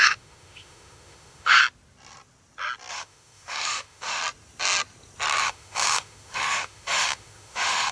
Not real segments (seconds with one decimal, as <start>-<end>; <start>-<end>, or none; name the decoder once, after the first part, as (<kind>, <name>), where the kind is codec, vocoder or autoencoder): 0.0-1.6 (autoencoder, DAC-VAE); 2.9-4.2; 5.4-7.9